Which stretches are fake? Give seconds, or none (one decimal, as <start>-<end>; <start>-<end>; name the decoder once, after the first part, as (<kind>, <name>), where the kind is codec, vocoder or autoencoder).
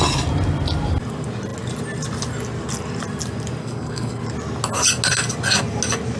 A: 3.6-4.2 (codec, SNAC)